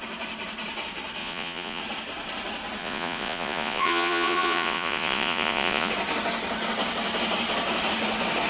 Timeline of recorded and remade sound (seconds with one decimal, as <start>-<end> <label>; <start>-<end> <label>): 0.0-1.2 recorded; 1.2-1.8 remade; 1.8-2.8 recorded; 2.8-5.9 remade; 5.9-8.5 recorded